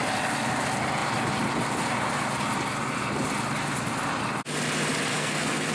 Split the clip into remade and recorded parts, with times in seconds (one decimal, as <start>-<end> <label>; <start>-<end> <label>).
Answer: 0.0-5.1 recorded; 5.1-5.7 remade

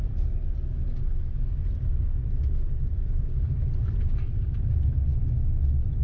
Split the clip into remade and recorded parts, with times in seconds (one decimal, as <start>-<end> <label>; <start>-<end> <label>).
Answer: 0.0-6.0 recorded

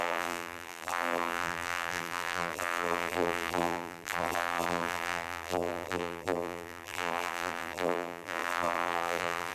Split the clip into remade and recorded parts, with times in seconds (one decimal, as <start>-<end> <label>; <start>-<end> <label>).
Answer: 0.0-9.5 remade

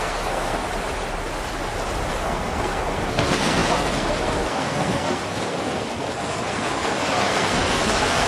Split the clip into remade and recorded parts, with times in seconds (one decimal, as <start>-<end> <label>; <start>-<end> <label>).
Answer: 0.0-0.6 remade; 0.6-2.1 recorded; 2.1-8.3 remade